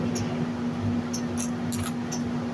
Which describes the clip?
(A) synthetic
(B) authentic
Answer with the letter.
B